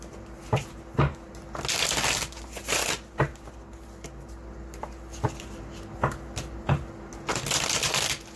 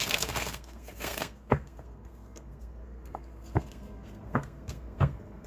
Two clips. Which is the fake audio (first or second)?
second